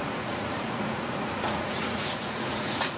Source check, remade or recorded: remade